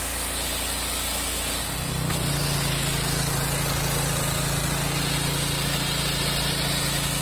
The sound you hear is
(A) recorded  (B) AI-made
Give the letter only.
A